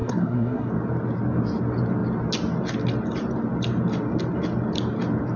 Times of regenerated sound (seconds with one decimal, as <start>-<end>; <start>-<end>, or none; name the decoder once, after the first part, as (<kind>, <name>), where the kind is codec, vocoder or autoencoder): 0.0-0.7 (codec, SNAC)